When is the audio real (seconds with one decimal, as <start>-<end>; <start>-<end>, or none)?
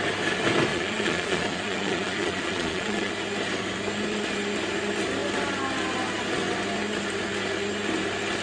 0.0-0.7; 3.1-8.4